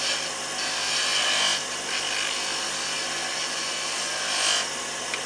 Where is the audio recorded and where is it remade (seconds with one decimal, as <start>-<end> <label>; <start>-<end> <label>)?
0.0-3.3 recorded; 3.3-3.9 remade; 3.9-5.3 recorded